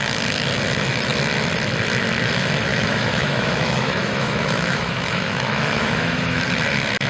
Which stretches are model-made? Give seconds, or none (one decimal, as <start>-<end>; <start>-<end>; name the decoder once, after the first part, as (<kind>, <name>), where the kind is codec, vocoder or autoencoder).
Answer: 2.7-6.4 (autoencoder, DAC-VAE)